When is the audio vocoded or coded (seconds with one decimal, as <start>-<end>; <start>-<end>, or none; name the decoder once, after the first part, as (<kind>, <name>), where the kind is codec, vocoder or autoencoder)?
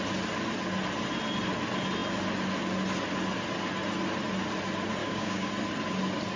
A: 5.0-5.5 (codec, DAC)